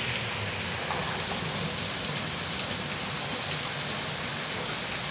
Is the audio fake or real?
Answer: real